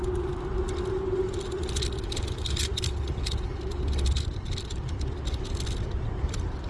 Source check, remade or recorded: recorded